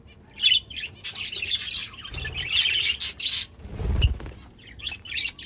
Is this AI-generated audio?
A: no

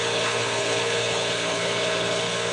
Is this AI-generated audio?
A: yes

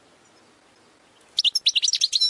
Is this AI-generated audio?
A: no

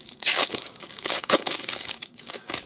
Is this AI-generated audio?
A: yes